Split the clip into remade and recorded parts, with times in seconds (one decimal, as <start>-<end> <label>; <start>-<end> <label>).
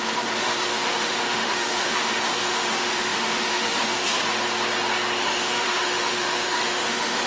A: 0.0-4.3 remade; 4.3-5.2 recorded; 5.2-7.3 remade